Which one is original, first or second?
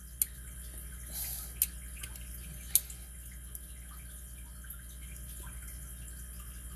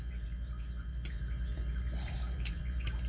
first